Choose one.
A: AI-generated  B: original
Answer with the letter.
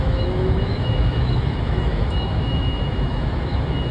A